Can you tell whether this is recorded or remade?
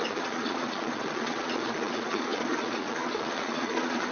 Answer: remade